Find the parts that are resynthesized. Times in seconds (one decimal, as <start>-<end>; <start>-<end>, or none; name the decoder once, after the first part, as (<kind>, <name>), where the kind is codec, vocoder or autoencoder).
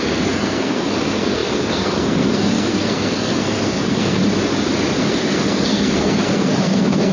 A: 0.0-4.2 (codec, SNAC); 5.0-7.1